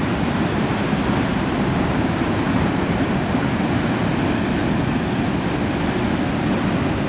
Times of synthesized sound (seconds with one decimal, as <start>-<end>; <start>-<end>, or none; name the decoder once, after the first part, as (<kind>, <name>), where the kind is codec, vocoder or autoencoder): 1.3-4.1 (vocoder, BigVGAN v2)